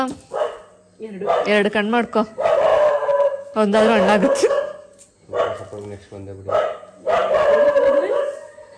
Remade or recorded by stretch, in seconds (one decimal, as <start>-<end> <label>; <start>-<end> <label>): 0.0-2.7 recorded; 2.7-4.5 remade; 4.5-8.8 recorded